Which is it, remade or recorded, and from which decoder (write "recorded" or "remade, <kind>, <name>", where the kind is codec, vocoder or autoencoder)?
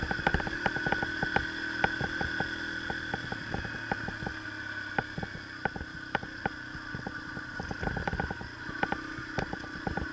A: recorded